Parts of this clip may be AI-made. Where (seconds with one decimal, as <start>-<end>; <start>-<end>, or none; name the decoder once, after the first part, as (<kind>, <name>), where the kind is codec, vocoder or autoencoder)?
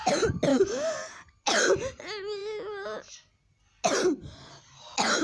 0.5-1.1 (codec, DAC)